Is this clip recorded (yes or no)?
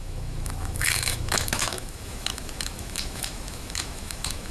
no